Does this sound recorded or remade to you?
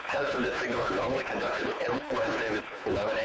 remade